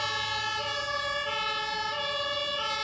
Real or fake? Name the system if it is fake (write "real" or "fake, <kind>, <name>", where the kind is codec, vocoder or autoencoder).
real